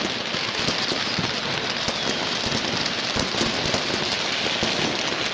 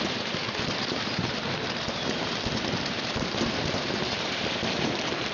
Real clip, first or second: first